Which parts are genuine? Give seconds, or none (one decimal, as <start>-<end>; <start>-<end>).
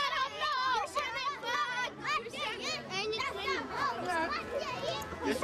0.8-3.2